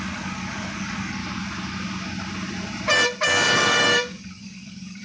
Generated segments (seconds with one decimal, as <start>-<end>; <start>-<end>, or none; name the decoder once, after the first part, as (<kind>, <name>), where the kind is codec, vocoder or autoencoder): 0.0-1.2 (codec, DAC); 3.5-5.0